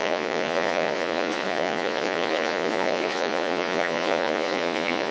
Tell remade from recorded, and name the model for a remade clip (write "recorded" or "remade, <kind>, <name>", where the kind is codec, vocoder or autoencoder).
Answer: remade, vocoder, Vocos